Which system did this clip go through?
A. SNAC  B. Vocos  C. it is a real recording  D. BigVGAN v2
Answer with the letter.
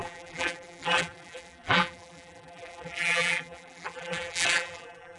D